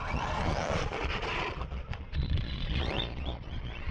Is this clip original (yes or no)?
no